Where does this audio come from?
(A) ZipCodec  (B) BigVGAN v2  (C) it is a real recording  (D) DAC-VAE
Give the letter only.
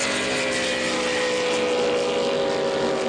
C